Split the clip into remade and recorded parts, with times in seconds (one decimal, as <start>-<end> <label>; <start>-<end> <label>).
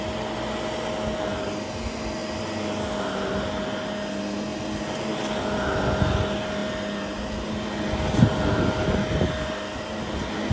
0.0-10.5 recorded